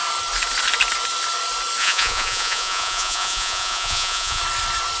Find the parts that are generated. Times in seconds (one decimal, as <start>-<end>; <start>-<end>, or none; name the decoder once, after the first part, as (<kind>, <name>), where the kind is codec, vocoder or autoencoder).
1.8-4.4 (vocoder, Vocos)